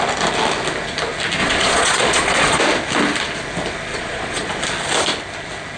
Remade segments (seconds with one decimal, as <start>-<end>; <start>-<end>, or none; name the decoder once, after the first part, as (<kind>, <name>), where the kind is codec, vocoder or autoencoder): 1.4-2.6 (vocoder, Vocos); 3.9-4.5